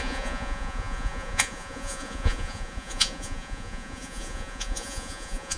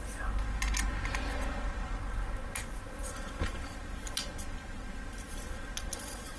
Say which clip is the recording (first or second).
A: second